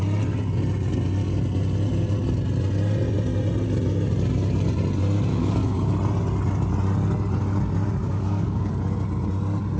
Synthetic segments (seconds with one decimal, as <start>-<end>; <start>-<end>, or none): 5.3-5.9; 8.0-8.7